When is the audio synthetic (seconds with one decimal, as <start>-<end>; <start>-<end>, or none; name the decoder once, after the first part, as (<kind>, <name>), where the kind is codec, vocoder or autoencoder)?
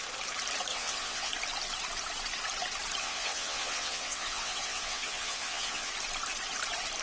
0.7-1.3 (vocoder, WaveNeXt); 3.0-5.9